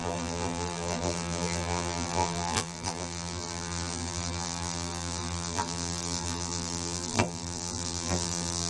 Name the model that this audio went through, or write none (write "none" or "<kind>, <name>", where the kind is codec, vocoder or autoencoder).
vocoder, BigVGAN v2